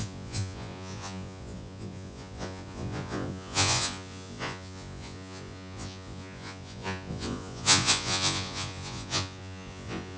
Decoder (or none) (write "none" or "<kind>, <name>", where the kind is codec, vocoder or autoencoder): vocoder, Vocos